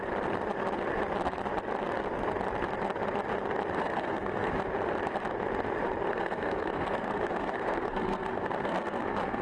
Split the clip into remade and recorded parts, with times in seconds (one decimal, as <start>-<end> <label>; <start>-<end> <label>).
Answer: 0.0-3.8 recorded; 3.8-4.5 remade; 4.5-6.1 recorded; 6.1-9.4 remade